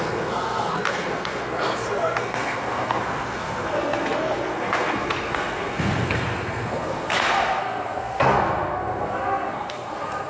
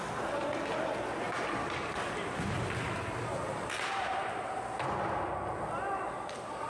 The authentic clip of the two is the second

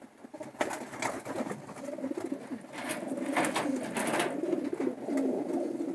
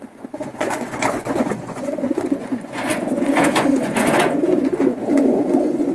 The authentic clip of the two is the first